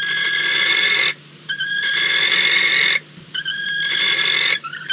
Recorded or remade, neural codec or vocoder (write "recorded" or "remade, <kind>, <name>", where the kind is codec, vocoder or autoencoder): remade, vocoder, BigVGAN v2